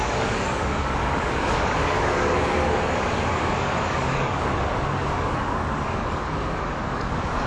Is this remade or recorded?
remade